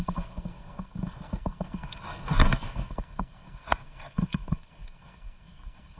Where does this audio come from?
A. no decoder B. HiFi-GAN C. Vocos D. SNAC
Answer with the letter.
D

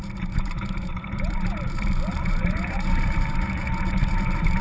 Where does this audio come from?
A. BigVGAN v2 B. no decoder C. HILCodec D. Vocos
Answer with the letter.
A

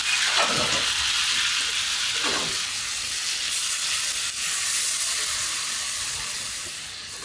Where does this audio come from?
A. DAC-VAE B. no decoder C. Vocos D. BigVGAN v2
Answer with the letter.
B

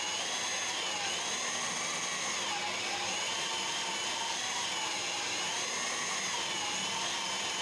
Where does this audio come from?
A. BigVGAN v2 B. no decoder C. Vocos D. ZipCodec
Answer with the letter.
B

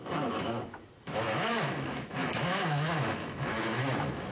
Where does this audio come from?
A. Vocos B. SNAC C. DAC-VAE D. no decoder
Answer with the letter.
C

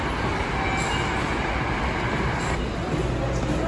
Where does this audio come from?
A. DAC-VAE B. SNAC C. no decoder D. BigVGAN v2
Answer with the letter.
C